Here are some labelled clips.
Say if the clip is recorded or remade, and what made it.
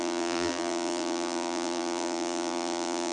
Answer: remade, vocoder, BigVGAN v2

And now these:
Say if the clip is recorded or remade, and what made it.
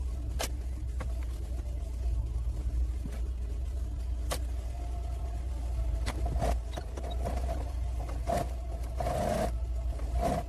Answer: recorded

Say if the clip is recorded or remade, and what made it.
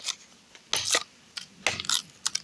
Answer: recorded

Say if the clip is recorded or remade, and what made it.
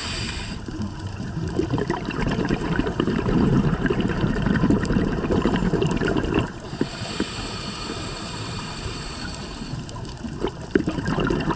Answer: remade, vocoder, BigVGAN v2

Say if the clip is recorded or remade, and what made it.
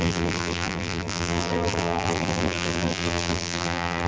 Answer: remade, vocoder, BigVGAN v2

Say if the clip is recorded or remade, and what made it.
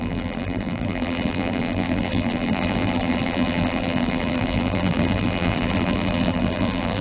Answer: remade, vocoder, BigVGAN v2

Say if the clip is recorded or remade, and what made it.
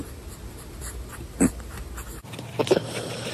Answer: recorded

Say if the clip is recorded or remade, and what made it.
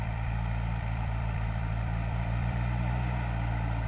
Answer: remade, vocoder, BigVGAN v2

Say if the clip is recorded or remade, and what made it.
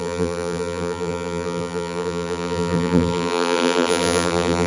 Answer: remade, vocoder, BigVGAN v2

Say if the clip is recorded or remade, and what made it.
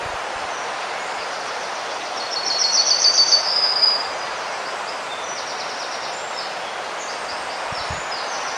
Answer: remade, vocoder, BigVGAN v2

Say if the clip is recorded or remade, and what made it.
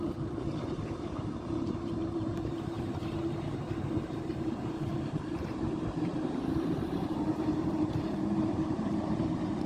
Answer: remade, vocoder, BigVGAN v2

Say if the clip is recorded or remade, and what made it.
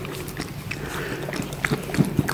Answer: recorded